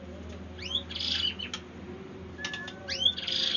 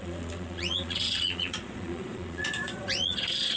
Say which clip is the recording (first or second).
first